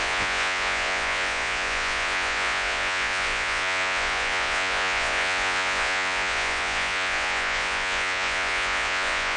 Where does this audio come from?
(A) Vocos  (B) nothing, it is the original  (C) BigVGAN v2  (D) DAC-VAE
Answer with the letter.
A